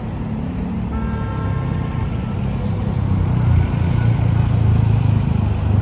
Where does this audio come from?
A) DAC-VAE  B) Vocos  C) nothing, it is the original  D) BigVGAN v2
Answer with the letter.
C